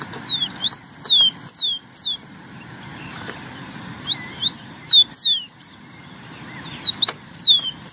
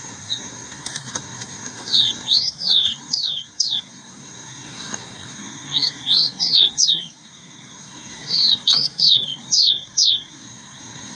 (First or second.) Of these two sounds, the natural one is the first